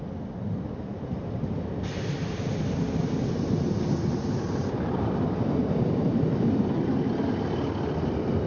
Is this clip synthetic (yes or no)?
no